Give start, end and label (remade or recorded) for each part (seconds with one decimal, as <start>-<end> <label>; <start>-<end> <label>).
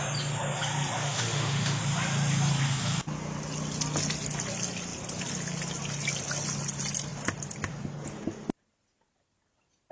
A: 0.0-1.0 recorded; 1.0-1.8 remade; 1.8-9.9 recorded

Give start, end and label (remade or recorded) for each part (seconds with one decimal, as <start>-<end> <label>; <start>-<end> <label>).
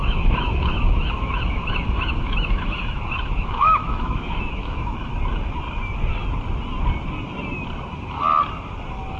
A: 0.0-5.1 remade; 5.1-9.2 recorded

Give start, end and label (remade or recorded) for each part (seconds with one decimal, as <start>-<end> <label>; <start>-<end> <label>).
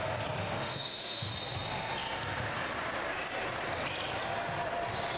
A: 0.0-0.4 recorded; 0.4-1.3 remade; 1.3-5.2 recorded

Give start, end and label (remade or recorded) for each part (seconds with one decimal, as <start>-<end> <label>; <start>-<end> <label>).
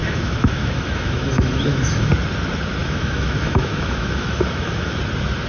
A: 0.0-2.1 remade; 2.1-2.8 recorded; 2.8-5.0 remade; 5.0-5.5 recorded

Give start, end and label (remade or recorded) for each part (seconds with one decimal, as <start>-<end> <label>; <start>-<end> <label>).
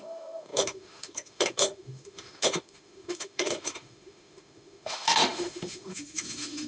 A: 0.0-6.7 remade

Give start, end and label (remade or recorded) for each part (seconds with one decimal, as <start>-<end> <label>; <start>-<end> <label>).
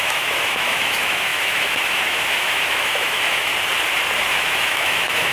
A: 0.0-3.5 remade; 3.5-4.2 recorded; 4.2-5.3 remade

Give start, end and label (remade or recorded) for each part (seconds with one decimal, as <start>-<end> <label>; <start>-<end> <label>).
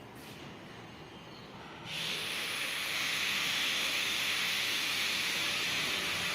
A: 0.0-1.6 recorded; 1.6-5.4 remade; 5.4-6.3 recorded